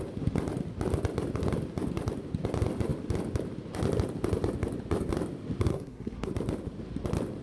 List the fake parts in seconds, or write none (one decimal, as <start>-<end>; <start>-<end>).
5.7-6.3